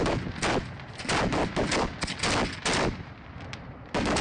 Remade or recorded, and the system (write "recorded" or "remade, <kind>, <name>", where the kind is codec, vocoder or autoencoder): recorded